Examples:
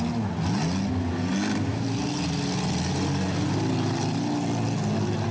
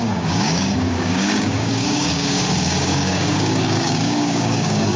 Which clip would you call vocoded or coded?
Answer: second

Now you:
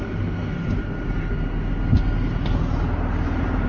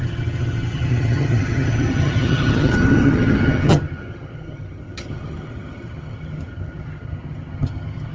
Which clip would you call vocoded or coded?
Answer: second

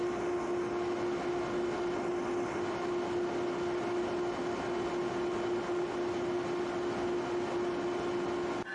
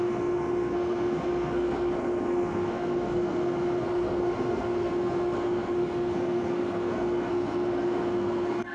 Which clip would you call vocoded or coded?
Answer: second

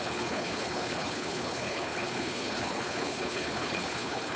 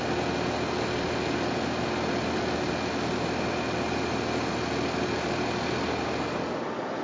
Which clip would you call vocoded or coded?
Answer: first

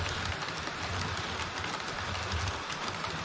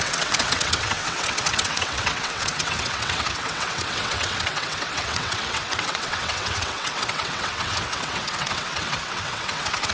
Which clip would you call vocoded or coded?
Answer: second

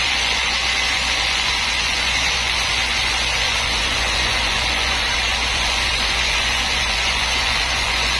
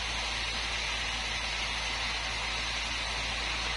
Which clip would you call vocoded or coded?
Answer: first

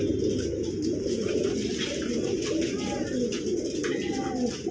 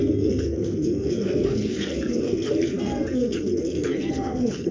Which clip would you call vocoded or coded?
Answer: second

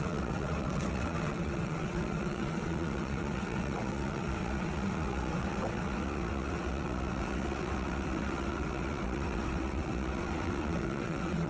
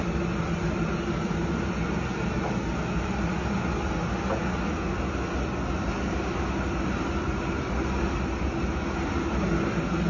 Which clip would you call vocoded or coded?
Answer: first